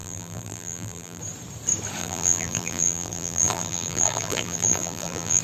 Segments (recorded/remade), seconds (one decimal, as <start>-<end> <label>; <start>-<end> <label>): 0.0-1.2 remade; 1.2-2.0 recorded; 2.0-5.4 remade

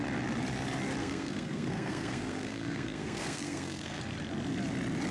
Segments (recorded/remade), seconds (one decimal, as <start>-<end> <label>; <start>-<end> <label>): 0.0-1.0 recorded; 1.0-4.0 remade; 4.0-5.1 recorded

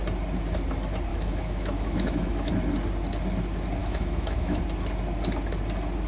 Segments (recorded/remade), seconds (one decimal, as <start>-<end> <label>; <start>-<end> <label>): 0.0-1.1 recorded; 1.1-2.5 remade; 2.5-3.8 recorded; 3.8-4.6 remade; 4.6-6.1 recorded

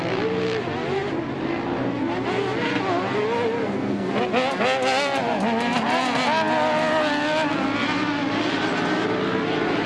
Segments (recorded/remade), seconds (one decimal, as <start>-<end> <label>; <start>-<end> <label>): 0.0-3.6 recorded; 3.6-4.1 remade; 4.1-9.9 recorded

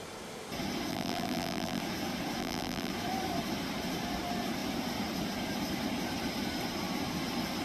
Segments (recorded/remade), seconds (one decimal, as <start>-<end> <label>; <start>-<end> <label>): 0.0-0.9 recorded; 0.9-1.8 remade; 1.8-2.4 recorded; 2.4-2.9 remade; 2.9-7.6 recorded

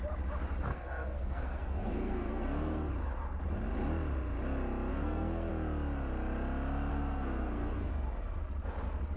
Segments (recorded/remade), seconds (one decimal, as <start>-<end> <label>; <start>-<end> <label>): 0.0-0.7 recorded; 0.7-2.9 remade; 2.9-4.9 recorded; 4.9-5.5 remade; 5.5-6.9 recorded; 6.9-7.9 remade; 7.9-9.2 recorded

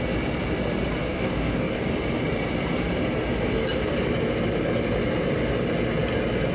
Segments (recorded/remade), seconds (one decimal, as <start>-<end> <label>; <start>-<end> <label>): 0.0-1.0 recorded; 1.0-1.8 remade; 1.8-6.5 recorded

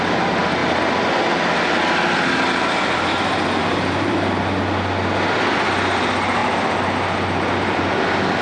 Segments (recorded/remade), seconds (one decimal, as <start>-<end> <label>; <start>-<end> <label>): 0.0-3.6 recorded; 3.6-4.3 remade; 4.3-8.4 recorded